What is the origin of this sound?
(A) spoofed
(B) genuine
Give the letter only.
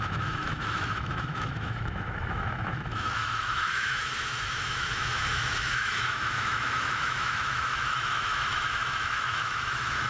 A